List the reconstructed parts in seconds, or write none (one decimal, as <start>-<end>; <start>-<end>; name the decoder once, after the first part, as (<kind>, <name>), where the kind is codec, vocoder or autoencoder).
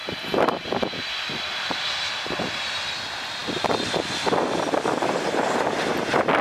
0.0-1.9 (vocoder, BigVGAN v2)